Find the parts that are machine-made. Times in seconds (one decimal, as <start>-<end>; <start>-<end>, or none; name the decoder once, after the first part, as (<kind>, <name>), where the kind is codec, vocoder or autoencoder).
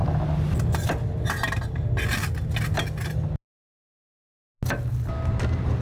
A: none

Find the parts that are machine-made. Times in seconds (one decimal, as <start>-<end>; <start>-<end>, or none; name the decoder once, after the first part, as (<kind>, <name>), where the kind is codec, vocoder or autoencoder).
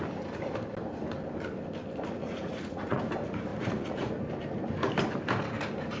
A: 2.2-3.0 (vocoder, Vocos); 3.5-4.1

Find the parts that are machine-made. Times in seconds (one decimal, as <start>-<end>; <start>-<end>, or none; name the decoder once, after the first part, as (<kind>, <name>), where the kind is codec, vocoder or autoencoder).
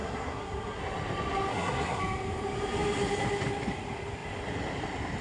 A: 0.0-0.8 (codec, SNAC); 1.5-2.0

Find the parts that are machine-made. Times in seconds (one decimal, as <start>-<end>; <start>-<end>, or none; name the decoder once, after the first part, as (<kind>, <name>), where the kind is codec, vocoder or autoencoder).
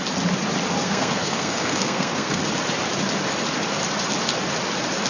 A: 0.8-2.4 (codec, SNAC)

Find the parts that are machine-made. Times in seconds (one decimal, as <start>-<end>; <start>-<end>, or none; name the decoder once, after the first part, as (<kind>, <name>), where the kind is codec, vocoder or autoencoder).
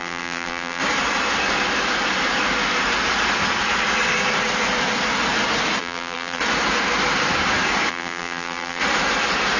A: 0.0-0.8 (vocoder, BigVGAN v2); 5.8-6.4; 7.9-8.8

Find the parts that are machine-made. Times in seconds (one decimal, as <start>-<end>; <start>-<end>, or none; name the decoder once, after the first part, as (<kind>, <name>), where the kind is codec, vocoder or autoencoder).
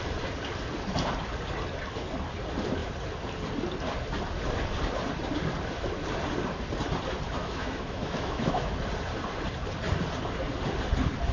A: 7.4-8.7 (autoencoder, DAC-VAE)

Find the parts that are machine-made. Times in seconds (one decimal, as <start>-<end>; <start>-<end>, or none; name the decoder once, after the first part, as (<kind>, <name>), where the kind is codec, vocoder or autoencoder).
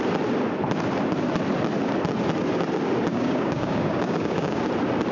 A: 3.1-4.6 (codec, DAC)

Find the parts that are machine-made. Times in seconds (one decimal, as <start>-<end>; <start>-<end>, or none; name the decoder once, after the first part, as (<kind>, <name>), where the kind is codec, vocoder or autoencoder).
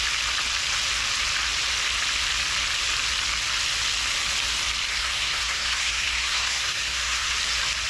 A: 4.9-7.3 (codec, SNAC)